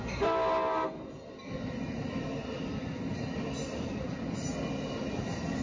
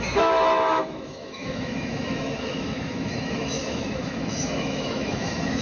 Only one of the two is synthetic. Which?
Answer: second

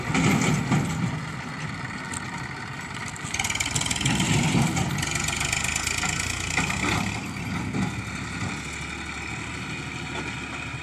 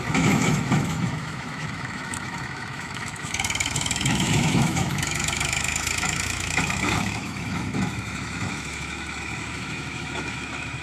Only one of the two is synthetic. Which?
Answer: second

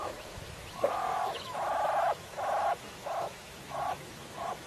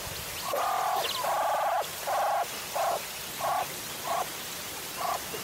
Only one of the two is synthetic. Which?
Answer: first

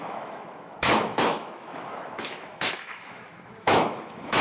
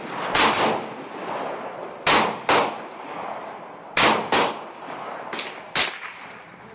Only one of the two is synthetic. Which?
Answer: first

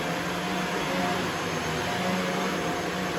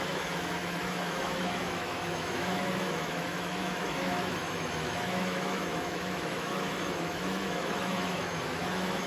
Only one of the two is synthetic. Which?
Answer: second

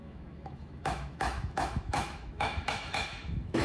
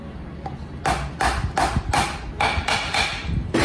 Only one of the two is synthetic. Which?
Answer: first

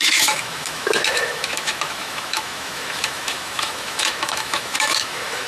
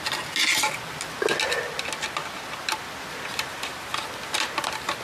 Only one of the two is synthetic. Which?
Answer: first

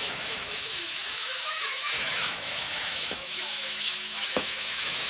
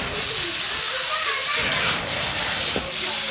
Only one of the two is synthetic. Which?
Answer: first